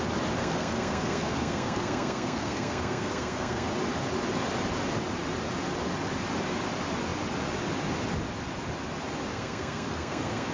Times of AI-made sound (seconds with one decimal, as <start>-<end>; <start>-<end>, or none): 0.4-3.7; 9.3-10.5